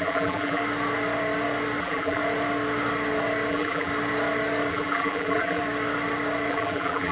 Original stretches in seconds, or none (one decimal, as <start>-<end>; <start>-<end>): 0.6-1.8; 2.2-3.5; 3.9-4.7; 5.6-6.5